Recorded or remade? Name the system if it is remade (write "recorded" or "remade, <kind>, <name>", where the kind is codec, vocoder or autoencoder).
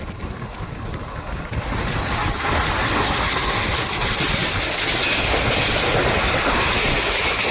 recorded